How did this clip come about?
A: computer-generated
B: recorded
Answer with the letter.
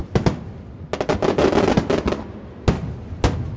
B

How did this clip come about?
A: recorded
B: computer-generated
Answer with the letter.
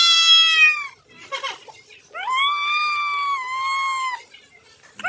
A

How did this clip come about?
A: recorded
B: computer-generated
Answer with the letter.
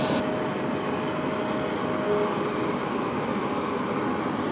A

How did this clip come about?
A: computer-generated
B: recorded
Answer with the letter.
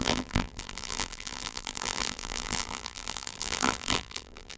A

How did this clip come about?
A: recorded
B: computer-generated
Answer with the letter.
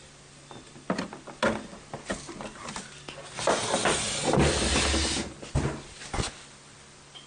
A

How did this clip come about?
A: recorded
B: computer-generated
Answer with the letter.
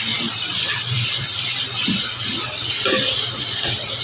B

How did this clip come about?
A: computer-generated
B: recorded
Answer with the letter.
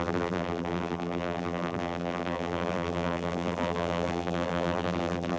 A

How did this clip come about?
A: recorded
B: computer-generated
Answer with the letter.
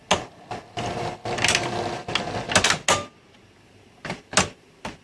A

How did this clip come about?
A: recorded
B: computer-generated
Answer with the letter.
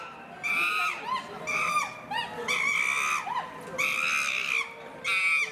A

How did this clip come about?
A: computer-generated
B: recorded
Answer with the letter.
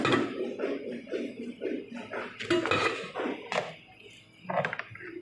B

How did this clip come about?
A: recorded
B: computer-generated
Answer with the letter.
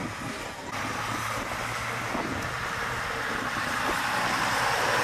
A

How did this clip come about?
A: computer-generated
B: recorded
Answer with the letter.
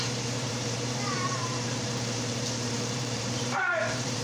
A